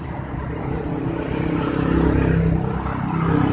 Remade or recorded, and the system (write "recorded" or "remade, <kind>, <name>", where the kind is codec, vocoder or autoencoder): recorded